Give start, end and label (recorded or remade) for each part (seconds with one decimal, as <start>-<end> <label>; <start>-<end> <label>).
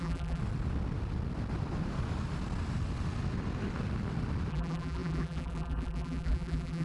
0.0-0.4 remade; 0.4-4.5 recorded; 4.5-6.8 remade